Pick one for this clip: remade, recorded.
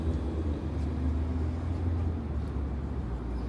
recorded